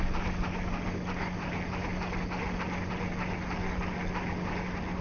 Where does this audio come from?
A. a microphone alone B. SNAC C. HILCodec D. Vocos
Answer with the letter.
A